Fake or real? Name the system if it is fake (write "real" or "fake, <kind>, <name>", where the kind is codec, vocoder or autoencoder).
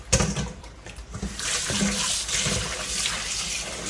fake, vocoder, BigVGAN v2